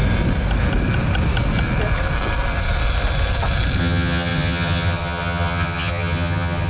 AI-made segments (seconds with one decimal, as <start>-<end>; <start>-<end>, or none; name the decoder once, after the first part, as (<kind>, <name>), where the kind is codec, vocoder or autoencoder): 3.8-6.7 (vocoder, HiFi-GAN)